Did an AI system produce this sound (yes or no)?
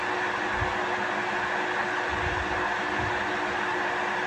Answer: no